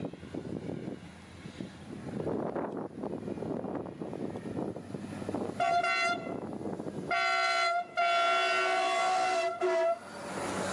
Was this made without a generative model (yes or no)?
yes